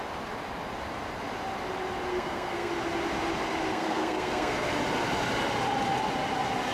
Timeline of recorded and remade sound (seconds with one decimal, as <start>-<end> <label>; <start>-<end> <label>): 0.0-2.1 recorded; 2.1-2.7 remade; 2.7-3.7 recorded; 3.7-4.7 remade; 4.7-6.7 recorded